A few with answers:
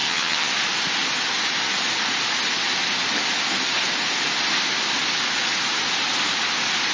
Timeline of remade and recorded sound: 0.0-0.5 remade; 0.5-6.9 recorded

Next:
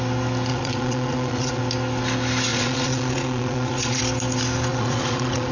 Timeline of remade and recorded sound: 0.0-0.5 recorded; 0.5-1.6 remade; 1.6-2.5 recorded; 2.5-4.0 remade; 4.0-4.7 recorded; 4.7-5.5 remade

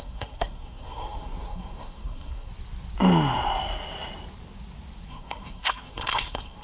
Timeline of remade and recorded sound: 0.0-2.5 remade; 2.5-5.1 recorded; 5.1-6.6 remade

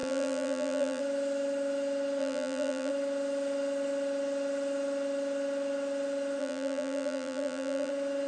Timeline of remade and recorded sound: 0.0-1.0 remade; 1.0-2.2 recorded; 2.2-2.9 remade; 2.9-6.4 recorded; 6.4-7.9 remade; 7.9-8.3 recorded